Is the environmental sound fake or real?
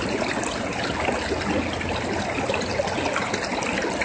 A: real